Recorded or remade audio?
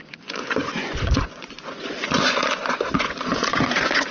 remade